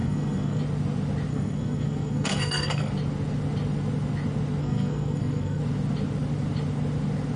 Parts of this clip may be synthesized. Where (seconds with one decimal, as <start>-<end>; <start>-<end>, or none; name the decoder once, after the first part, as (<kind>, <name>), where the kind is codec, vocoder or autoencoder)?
0.0-0.6 (codec, SNAC); 1.3-2.9; 4.6-5.6